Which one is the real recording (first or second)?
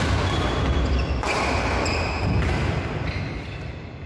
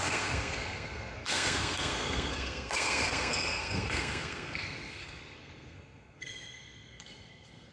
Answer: first